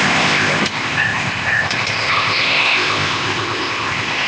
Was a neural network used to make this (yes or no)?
yes